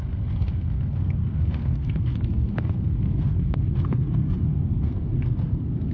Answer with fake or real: fake